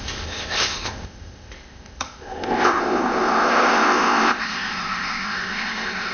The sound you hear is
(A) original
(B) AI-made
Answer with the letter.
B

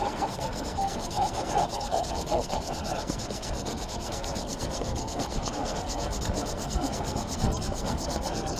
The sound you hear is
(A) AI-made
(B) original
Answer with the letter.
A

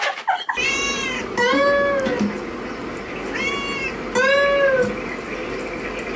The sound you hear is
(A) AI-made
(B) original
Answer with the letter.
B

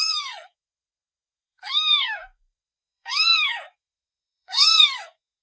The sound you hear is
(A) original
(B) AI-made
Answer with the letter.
B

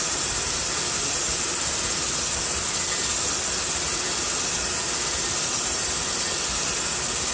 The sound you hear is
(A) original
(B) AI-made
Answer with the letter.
A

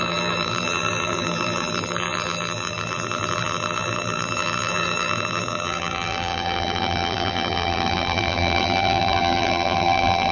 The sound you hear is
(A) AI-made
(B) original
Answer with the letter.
A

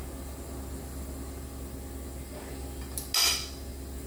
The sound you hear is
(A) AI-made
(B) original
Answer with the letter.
B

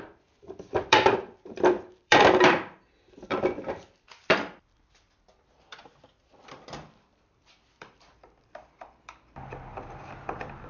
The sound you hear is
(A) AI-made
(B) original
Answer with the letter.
A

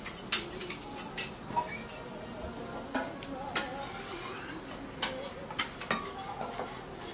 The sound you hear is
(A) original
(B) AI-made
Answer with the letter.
A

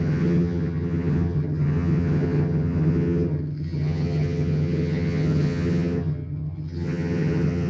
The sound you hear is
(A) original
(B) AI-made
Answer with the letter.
B